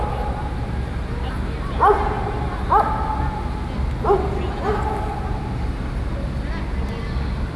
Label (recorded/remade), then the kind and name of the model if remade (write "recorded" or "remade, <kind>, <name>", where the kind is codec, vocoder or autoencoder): recorded